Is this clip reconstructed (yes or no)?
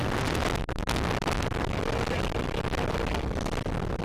no